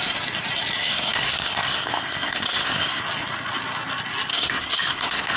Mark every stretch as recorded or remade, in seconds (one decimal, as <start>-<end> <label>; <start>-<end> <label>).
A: 0.0-0.8 recorded; 0.8-3.0 remade; 3.0-4.3 recorded; 4.3-5.4 remade